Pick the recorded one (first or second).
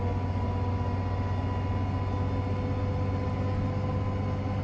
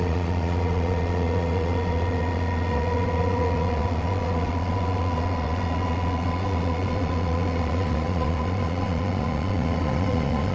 first